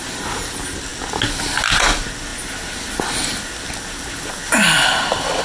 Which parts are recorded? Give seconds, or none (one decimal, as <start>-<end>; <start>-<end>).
0.0-5.4